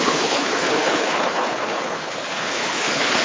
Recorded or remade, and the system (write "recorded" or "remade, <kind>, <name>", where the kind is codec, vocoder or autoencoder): remade, codec, HILCodec